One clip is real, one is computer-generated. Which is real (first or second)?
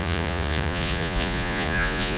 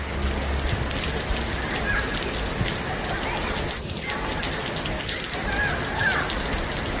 second